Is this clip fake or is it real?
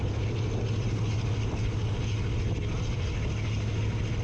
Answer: real